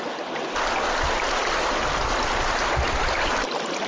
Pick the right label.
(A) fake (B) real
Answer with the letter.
B